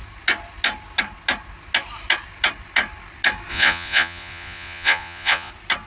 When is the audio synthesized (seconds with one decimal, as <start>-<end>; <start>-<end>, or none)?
3.5-5.5